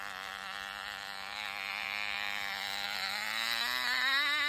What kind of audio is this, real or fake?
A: real